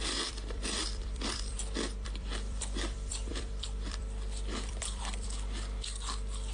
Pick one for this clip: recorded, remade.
remade